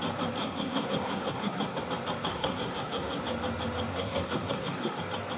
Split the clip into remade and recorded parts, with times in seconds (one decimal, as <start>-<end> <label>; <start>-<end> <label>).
0.0-0.4 recorded; 0.4-1.8 remade; 1.8-2.3 recorded; 2.3-3.2 remade; 3.2-3.9 recorded; 3.9-5.0 remade; 5.0-5.4 recorded